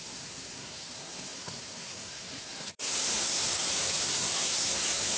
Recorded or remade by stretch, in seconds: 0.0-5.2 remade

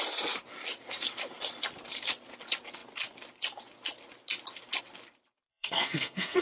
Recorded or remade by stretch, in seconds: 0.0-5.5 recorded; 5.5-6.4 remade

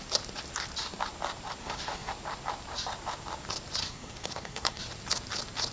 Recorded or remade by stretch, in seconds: 0.0-1.6 recorded; 1.6-2.1 remade; 2.1-3.8 recorded; 3.8-4.8 remade; 4.8-5.7 recorded

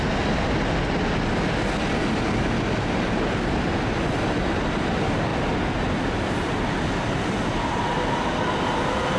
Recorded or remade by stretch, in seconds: 0.0-9.2 recorded